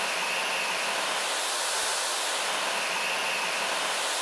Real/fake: real